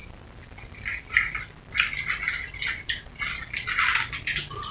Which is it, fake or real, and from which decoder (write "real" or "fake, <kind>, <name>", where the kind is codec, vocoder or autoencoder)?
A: real